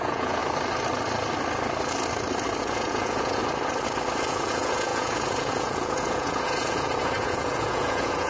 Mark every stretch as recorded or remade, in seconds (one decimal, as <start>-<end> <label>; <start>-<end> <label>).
0.0-0.4 remade; 0.4-2.6 recorded; 2.6-3.4 remade; 3.4-4.3 recorded; 4.3-8.3 remade